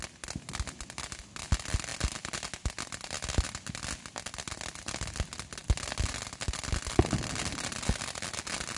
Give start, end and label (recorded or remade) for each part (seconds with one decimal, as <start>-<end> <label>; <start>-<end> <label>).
0.0-8.8 recorded